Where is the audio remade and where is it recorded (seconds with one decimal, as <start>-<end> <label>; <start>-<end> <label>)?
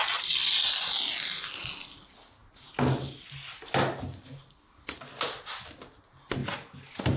0.0-7.2 recorded